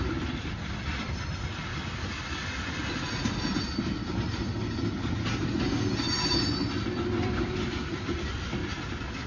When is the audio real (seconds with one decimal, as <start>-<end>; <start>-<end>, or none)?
1.7-6.4; 8.6-9.3